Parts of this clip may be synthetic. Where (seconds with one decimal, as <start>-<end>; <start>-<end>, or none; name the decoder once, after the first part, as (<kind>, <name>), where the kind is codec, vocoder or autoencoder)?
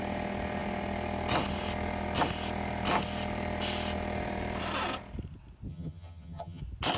5.7-6.6 (vocoder, HiFi-GAN)